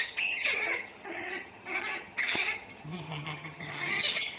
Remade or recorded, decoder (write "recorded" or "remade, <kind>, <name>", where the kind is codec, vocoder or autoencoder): remade, vocoder, HiFi-GAN